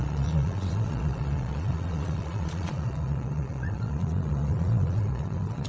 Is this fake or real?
fake